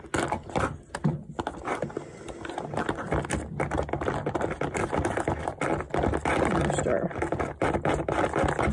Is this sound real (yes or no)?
yes